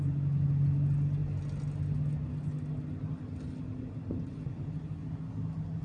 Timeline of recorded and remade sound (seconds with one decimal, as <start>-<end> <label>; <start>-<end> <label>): 0.0-5.8 recorded